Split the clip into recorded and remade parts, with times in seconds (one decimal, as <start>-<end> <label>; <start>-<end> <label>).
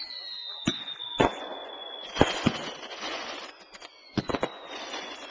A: 0.0-5.3 remade